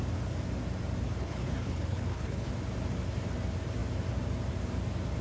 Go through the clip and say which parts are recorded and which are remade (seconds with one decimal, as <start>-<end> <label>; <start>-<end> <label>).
0.0-1.2 recorded; 1.2-2.5 remade; 2.5-5.2 recorded